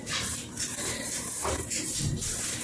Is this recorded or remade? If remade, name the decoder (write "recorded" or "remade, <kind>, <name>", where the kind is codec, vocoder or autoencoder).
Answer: remade, vocoder, BigVGAN v2